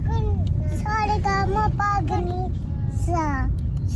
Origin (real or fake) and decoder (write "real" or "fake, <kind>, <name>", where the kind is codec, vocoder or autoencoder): real